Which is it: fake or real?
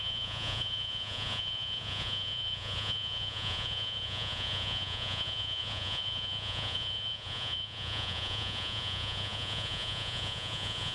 fake